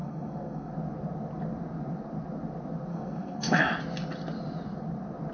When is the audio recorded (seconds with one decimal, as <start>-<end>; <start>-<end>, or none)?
0.7-2.9; 3.6-5.3